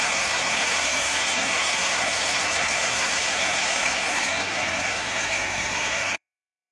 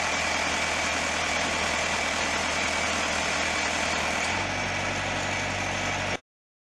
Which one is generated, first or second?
first